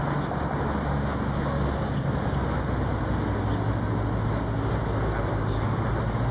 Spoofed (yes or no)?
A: no